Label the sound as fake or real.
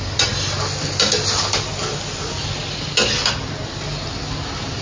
real